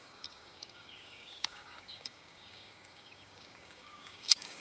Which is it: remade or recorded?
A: remade